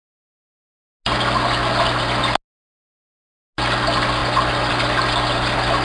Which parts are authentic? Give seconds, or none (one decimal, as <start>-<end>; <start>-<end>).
0.0-5.8

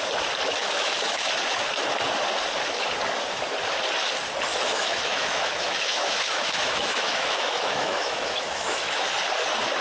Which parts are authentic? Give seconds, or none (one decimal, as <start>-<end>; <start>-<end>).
0.0-0.6; 1.3-4.5; 9.1-9.8